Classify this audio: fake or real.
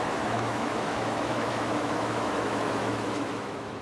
fake